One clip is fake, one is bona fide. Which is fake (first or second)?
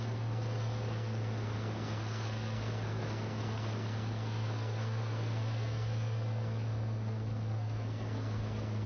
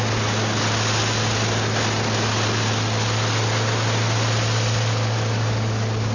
first